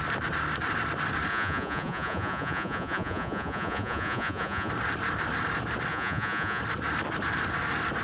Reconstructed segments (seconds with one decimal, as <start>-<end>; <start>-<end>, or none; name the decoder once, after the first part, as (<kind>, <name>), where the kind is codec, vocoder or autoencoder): 1.3-4.7 (vocoder, Vocos); 5.9-6.6